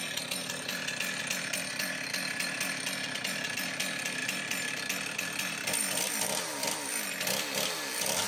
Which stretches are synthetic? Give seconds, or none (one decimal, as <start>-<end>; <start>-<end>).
none

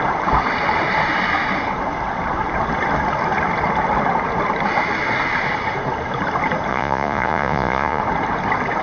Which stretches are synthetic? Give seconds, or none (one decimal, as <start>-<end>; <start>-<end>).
6.7-8.0

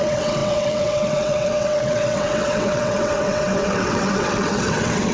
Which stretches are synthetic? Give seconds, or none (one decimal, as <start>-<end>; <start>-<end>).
0.0-5.1

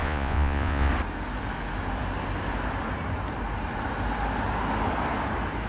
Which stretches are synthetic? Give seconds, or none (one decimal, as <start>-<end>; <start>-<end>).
0.0-0.9

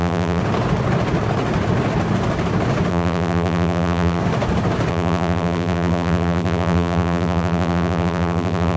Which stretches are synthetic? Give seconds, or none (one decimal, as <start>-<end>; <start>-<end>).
0.0-0.4; 2.9-4.2; 4.9-8.8

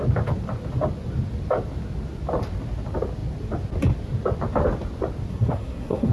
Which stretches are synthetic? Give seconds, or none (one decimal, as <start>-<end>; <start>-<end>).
5.3-6.1